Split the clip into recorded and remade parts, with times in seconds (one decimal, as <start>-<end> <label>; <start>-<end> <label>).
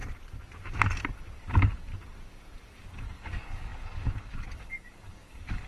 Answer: 0.0-1.4 recorded; 1.4-1.9 remade; 1.9-2.8 recorded; 2.8-5.7 remade